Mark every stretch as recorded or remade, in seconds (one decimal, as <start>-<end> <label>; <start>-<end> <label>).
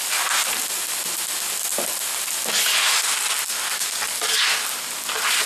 0.0-5.5 recorded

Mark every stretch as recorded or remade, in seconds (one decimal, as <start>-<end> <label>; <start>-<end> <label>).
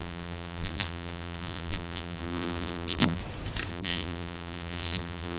0.0-3.2 remade; 3.2-3.7 recorded; 3.7-5.4 remade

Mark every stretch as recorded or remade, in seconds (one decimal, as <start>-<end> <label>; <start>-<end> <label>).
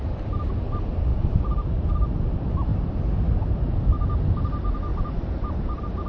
0.0-1.1 recorded; 1.1-1.9 remade; 1.9-4.9 recorded; 4.9-6.1 remade